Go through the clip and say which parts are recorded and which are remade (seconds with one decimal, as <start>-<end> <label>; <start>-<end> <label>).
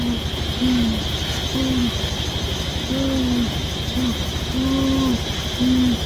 0.0-1.8 recorded; 1.8-4.4 remade; 4.4-6.1 recorded